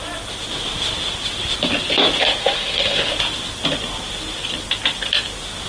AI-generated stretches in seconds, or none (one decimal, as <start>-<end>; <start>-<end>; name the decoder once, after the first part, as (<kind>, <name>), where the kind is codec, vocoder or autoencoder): 2.4-3.1 (autoencoder, DAC-VAE)